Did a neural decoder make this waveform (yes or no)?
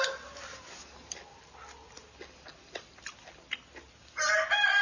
no